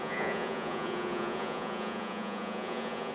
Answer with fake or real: fake